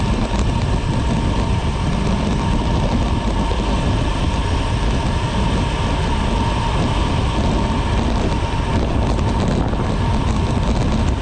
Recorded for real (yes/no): yes